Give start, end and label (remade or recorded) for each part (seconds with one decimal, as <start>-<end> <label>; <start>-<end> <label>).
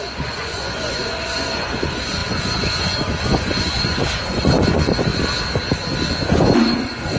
0.0-5.1 remade; 5.1-6.3 recorded; 6.3-7.2 remade